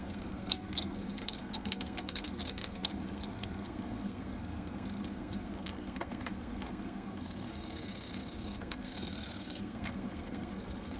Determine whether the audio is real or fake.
fake